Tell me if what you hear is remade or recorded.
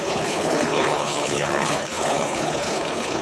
remade